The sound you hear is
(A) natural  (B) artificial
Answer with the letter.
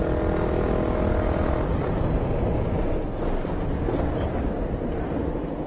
A